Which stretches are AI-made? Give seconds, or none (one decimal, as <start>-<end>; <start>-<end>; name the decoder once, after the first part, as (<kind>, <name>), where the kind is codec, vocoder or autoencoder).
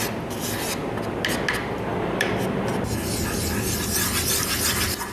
none